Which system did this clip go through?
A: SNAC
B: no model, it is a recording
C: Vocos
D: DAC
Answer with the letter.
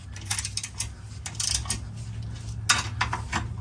B